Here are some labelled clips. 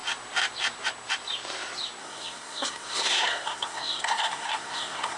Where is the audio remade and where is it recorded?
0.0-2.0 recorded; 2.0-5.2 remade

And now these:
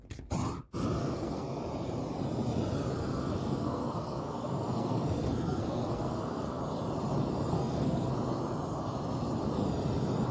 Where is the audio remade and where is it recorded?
0.0-1.0 recorded; 1.0-1.6 remade; 1.6-3.0 recorded; 3.0-6.6 remade; 6.6-7.5 recorded; 7.5-8.1 remade; 8.1-10.3 recorded

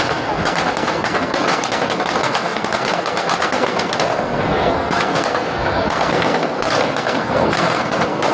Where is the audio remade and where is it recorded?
0.0-8.3 remade

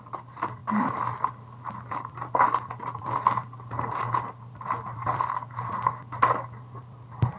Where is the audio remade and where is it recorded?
0.0-7.4 recorded

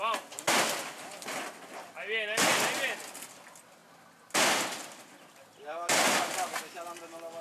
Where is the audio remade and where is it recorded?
0.0-7.4 recorded